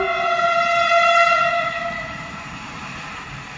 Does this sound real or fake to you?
real